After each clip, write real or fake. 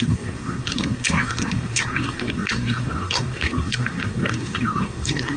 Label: fake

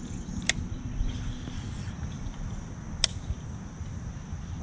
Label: real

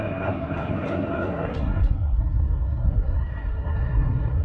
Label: fake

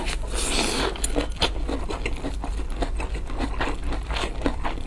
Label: real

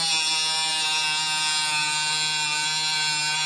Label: real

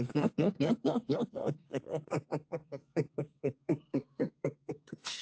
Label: fake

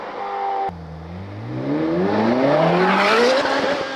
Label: real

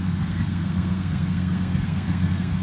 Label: fake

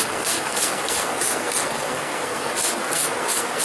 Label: fake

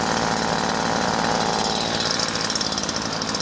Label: real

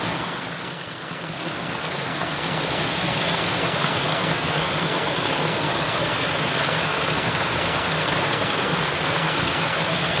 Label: fake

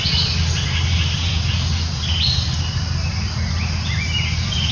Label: real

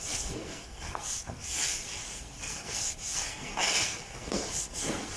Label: fake